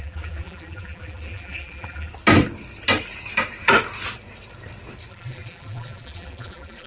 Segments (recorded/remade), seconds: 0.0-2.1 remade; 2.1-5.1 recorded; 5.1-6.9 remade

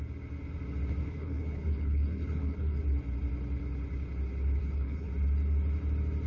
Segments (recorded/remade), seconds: 0.0-1.0 recorded; 1.0-2.8 remade; 2.8-4.6 recorded; 4.6-5.1 remade; 5.1-6.3 recorded

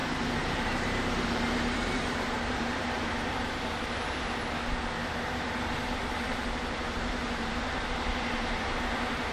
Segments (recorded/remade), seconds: 0.0-4.4 remade; 4.4-5.0 recorded; 5.0-9.3 remade

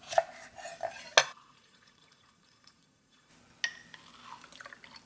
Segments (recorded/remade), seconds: 0.0-1.2 recorded; 1.2-3.3 remade; 3.3-5.1 recorded

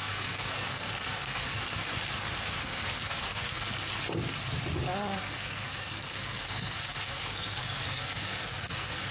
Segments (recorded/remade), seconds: 0.0-1.9 remade; 1.9-2.6 recorded; 2.6-3.7 remade; 3.7-5.2 recorded; 5.2-9.1 remade

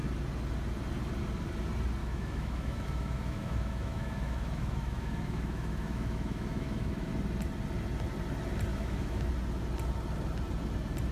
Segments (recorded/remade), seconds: 0.0-2.0 recorded; 2.0-7.1 remade; 7.1-8.7 recorded; 8.7-9.3 remade; 9.3-11.1 recorded

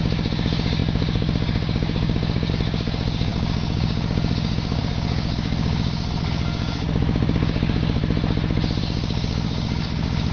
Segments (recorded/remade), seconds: 0.0-8.0 remade; 8.0-8.8 recorded; 8.8-10.3 remade